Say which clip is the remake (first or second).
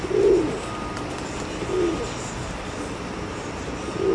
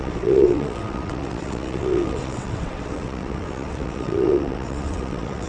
second